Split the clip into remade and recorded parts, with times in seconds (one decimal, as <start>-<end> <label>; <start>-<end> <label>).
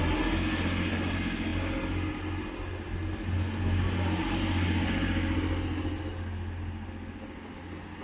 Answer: 0.0-8.0 recorded